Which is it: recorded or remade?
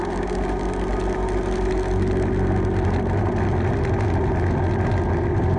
recorded